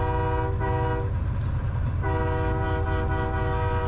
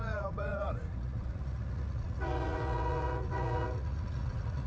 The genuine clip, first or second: first